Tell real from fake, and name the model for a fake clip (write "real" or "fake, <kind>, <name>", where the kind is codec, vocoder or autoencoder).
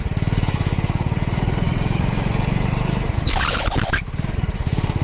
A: real